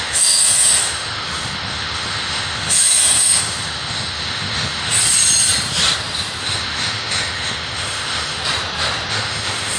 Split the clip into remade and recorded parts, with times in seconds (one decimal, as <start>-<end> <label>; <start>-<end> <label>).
0.0-4.9 remade; 4.9-6.4 recorded; 6.4-8.4 remade; 8.4-9.1 recorded; 9.1-9.8 remade